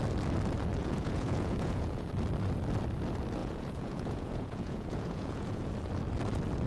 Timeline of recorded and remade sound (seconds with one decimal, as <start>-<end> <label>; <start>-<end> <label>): 0.0-0.8 recorded; 0.8-2.1 remade; 2.1-3.4 recorded; 3.4-5.7 remade; 5.7-6.7 recorded